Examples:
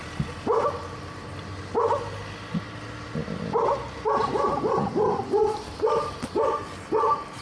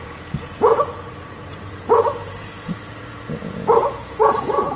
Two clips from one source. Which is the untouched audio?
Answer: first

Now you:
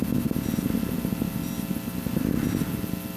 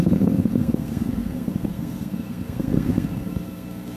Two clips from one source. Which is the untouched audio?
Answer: first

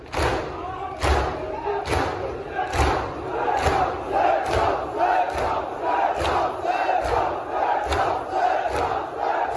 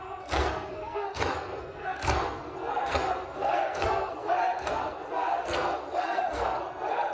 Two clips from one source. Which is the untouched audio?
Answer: first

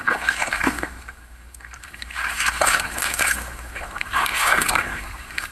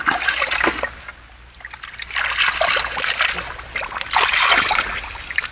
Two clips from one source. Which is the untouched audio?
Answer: second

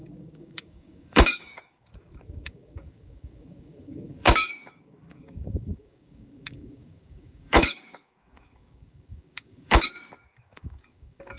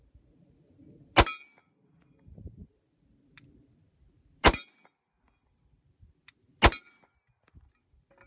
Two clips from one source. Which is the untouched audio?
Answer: second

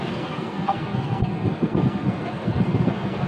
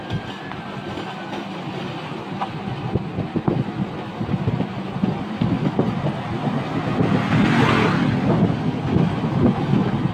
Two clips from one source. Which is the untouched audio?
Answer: second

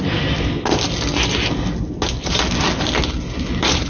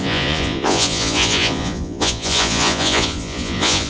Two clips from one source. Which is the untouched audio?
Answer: first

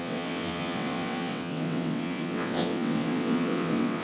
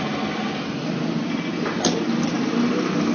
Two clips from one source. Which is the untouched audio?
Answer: second